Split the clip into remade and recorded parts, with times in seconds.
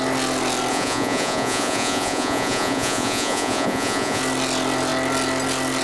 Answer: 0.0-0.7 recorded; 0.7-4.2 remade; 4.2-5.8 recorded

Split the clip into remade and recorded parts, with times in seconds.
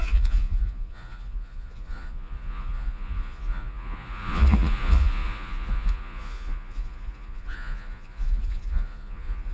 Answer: 0.0-9.5 remade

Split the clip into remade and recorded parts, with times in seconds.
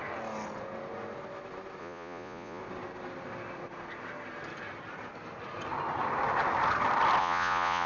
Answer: 0.0-1.8 recorded; 1.8-2.6 remade; 2.6-7.2 recorded; 7.2-7.9 remade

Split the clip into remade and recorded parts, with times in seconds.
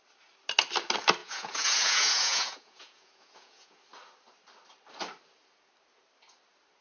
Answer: 0.0-1.2 recorded; 1.2-3.8 remade; 3.8-6.8 recorded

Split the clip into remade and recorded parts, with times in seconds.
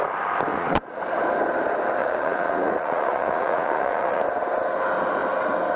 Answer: 0.0-0.5 recorded; 0.5-1.0 remade; 1.0-2.0 recorded; 2.0-4.2 remade; 4.2-5.8 recorded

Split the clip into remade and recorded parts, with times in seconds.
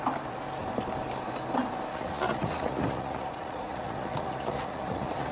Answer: 0.0-1.9 recorded; 1.9-5.3 remade